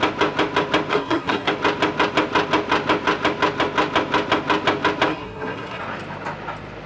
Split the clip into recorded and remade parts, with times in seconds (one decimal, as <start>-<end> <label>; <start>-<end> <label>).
0.0-0.9 recorded; 0.9-1.5 remade; 1.5-5.1 recorded; 5.1-5.8 remade; 5.8-6.9 recorded